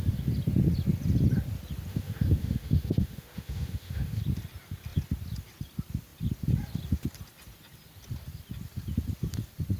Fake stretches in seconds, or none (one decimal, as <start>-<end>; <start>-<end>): 1.9-4.2